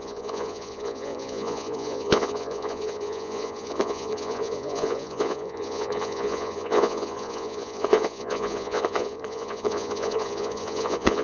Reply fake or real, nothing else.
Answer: fake